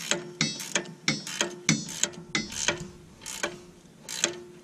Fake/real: real